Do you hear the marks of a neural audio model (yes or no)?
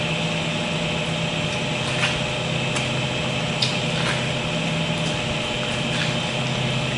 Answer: no